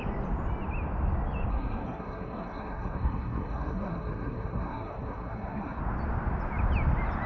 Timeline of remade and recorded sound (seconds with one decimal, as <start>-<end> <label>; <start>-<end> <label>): 0.0-1.5 recorded; 1.5-5.8 remade; 5.8-7.3 recorded